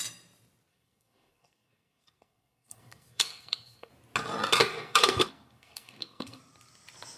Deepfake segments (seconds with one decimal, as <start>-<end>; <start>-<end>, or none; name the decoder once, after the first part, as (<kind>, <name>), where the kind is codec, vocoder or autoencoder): 0.7-3.9 (codec, SNAC); 4.6-6.4